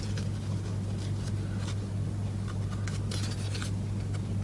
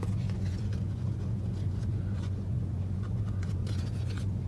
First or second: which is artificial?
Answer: second